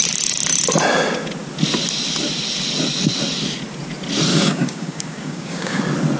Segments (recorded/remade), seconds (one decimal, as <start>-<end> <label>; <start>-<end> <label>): 0.0-4.3 recorded; 4.3-5.8 remade; 5.8-6.2 recorded

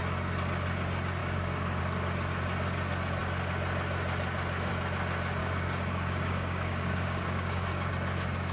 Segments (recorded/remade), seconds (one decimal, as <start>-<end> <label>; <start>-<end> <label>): 0.0-1.2 recorded; 1.2-1.8 remade; 1.8-5.4 recorded; 5.4-7.9 remade; 7.9-8.5 recorded

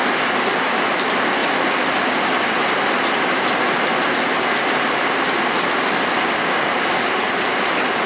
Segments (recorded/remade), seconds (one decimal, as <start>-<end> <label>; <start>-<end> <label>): 0.0-6.4 recorded; 6.4-7.1 remade; 7.1-8.1 recorded

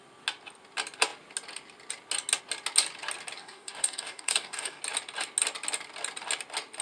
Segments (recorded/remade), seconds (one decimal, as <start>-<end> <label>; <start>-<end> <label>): 0.0-3.4 recorded; 3.4-4.8 remade; 4.8-6.8 recorded

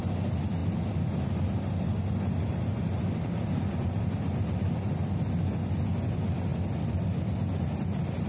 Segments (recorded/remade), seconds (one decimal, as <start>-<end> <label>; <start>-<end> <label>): 0.0-8.3 recorded